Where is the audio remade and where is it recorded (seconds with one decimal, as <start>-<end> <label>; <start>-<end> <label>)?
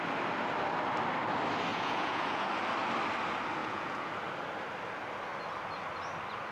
0.0-1.7 recorded; 1.7-2.5 remade; 2.5-3.6 recorded; 3.6-4.1 remade; 4.1-6.5 recorded